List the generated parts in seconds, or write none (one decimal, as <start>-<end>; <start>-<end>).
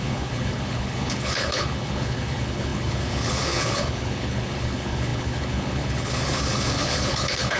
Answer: 0.0-7.6